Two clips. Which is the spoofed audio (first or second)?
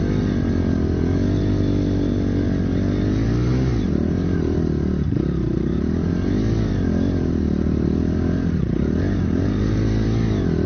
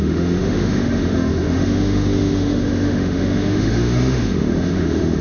second